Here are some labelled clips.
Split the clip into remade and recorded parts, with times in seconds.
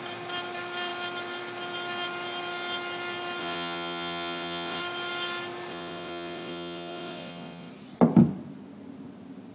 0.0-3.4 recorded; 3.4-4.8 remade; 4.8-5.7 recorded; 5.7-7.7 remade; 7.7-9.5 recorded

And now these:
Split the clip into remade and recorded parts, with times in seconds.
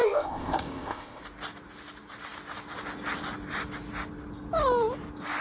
0.0-1.2 remade; 1.2-5.4 recorded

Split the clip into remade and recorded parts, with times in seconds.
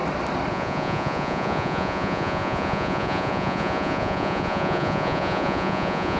0.0-0.5 recorded; 0.5-6.2 remade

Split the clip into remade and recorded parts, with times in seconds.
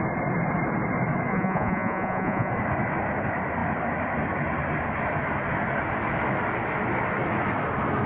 0.0-1.3 recorded; 1.3-2.5 remade; 2.5-8.1 recorded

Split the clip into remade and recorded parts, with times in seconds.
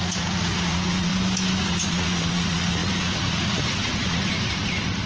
0.0-1.1 remade; 1.1-1.6 recorded; 1.6-5.1 remade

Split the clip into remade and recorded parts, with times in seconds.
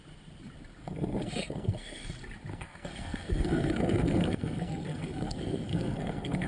0.0-0.8 recorded; 0.8-2.1 remade; 2.1-2.5 recorded; 2.5-6.5 remade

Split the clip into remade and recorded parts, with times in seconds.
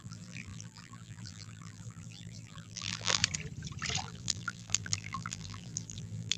0.0-3.2 remade; 3.2-4.0 recorded; 4.0-6.4 remade